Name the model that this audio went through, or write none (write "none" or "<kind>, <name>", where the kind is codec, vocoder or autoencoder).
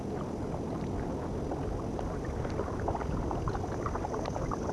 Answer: none